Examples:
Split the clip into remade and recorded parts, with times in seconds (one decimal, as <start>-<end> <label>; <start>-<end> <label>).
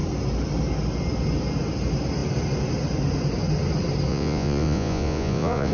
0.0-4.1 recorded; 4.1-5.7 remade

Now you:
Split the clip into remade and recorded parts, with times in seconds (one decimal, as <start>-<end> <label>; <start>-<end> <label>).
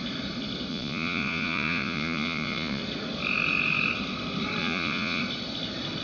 0.0-0.7 recorded; 0.7-2.8 remade; 2.8-4.6 recorded; 4.6-5.2 remade; 5.2-6.0 recorded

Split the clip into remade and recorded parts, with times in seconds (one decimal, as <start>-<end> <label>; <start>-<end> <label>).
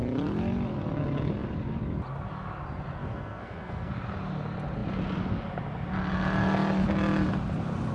0.0-3.0 recorded; 3.0-3.9 remade; 3.9-7.9 recorded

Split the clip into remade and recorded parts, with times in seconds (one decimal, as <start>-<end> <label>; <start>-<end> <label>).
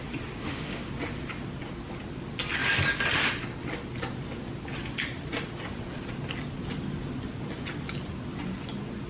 0.0-0.4 recorded; 0.4-0.9 remade; 0.9-9.1 recorded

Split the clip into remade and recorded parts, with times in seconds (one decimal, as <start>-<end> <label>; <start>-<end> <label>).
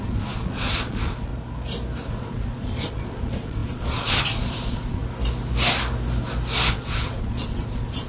0.0-1.3 remade; 1.3-2.1 recorded; 2.1-5.0 remade; 5.0-6.7 recorded; 6.7-8.1 remade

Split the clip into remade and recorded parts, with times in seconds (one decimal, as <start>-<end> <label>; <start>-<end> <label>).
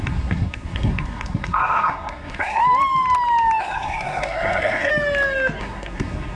0.0-2.6 remade; 2.6-3.6 recorded; 3.6-4.9 remade; 4.9-5.6 recorded; 5.6-6.4 remade